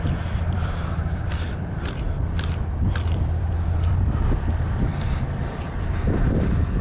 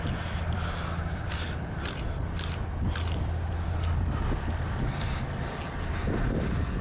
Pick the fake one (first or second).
first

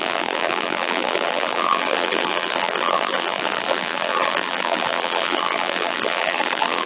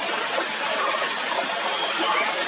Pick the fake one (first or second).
first